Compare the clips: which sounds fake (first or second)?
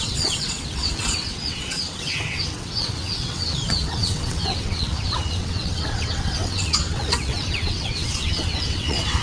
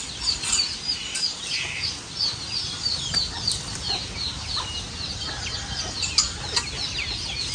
first